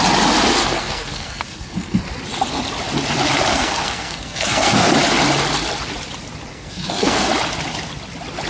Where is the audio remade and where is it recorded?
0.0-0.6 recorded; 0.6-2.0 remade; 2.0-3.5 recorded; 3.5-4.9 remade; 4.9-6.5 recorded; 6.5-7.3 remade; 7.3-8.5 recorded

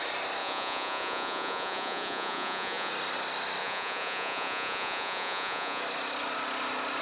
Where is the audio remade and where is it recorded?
0.0-0.4 recorded; 0.4-2.9 remade; 2.9-3.6 recorded; 3.6-5.8 remade; 5.8-7.0 recorded

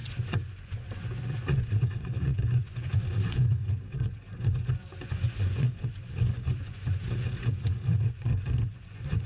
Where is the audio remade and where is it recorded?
0.0-9.3 remade

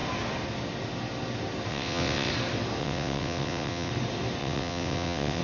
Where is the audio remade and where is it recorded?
0.0-1.7 recorded; 1.7-2.3 remade; 2.3-2.8 recorded; 2.8-3.9 remade; 3.9-4.4 recorded; 4.4-5.4 remade